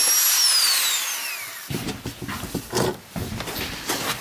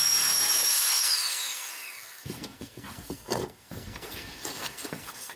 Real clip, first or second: first